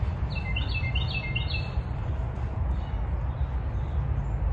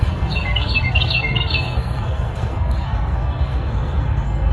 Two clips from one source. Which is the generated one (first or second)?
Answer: second